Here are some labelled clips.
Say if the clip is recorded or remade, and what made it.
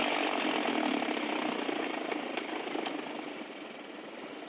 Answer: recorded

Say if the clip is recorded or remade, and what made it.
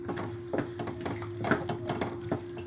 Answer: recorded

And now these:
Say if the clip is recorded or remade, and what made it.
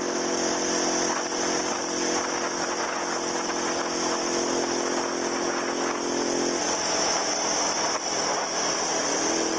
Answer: recorded